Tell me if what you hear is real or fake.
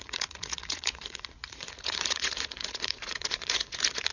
fake